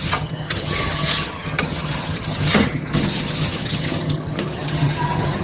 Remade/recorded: remade